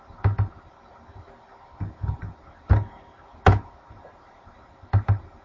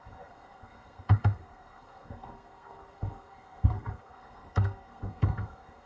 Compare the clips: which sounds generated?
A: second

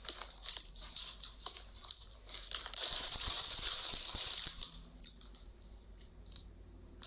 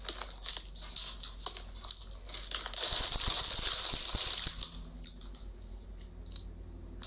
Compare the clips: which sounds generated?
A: first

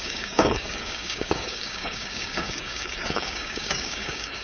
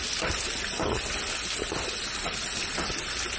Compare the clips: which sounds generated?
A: first